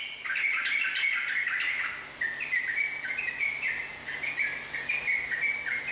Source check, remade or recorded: recorded